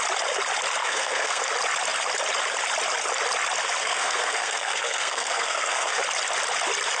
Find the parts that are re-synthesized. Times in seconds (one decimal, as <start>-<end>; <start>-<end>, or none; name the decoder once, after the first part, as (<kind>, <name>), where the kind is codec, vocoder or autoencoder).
0.8-1.4 (codec, SNAC); 3.8-6.0